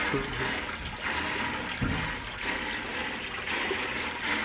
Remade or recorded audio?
recorded